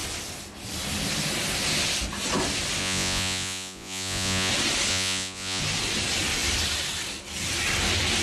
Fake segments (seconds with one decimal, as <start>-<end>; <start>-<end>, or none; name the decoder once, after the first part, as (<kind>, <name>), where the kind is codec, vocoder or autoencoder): 2.8-4.5 (vocoder, Vocos); 4.9-5.6